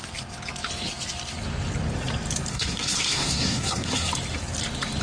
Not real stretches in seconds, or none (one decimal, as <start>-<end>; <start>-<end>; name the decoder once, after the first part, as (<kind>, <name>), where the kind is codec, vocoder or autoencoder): 2.5-4.1 (codec, SNAC)